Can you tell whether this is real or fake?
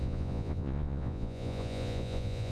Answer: fake